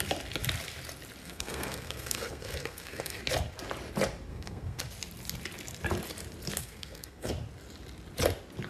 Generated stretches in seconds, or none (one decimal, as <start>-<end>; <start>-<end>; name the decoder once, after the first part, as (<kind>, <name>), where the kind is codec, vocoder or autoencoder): 1.2-3.2 (codec, SNAC); 4.3-4.8; 6.6-7.3